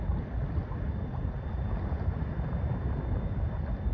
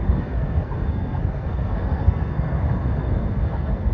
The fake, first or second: second